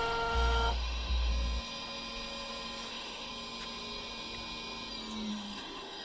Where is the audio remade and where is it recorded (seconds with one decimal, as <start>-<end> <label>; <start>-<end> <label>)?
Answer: 0.0-1.3 remade; 1.3-2.9 recorded; 2.9-3.3 remade; 3.3-5.3 recorded; 5.3-6.0 remade